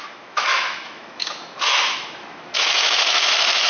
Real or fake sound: fake